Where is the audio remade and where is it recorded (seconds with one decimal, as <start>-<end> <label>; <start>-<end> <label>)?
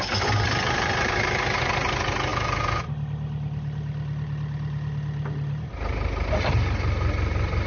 0.0-7.7 recorded